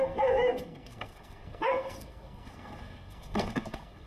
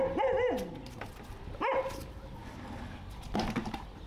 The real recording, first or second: second